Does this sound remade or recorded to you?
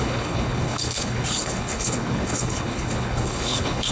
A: remade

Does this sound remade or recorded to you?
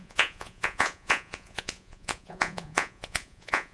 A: remade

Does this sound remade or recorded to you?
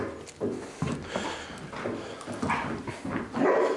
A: recorded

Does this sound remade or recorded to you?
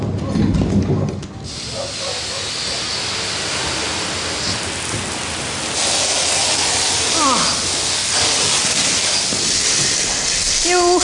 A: recorded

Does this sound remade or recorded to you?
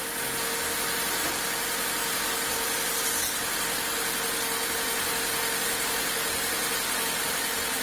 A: recorded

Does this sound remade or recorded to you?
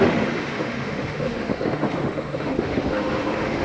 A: remade